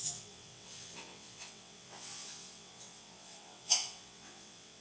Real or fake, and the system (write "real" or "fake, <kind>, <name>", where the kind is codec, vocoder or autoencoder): fake, vocoder, WaveNeXt